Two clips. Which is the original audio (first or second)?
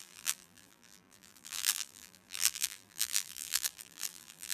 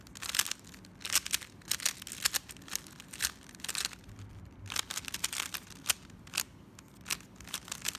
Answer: second